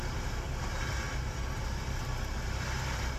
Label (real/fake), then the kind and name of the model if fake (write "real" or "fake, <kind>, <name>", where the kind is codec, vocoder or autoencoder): real